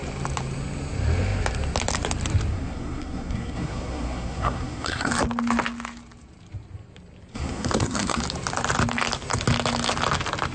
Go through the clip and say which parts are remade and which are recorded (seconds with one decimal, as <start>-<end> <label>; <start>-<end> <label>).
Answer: 0.0-2.5 recorded; 2.5-5.1 remade; 5.1-7.3 recorded; 7.3-8.2 remade; 8.2-10.5 recorded